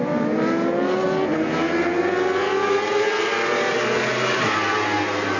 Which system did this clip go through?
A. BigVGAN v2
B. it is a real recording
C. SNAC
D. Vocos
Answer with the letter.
B